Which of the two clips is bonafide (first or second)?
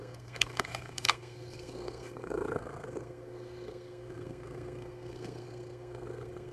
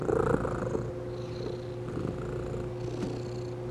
second